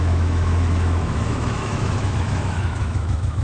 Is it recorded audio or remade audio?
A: remade